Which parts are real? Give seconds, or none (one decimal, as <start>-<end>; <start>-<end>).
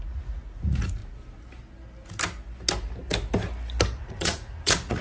1.0-4.0